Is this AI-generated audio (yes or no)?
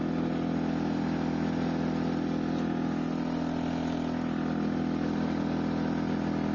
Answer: no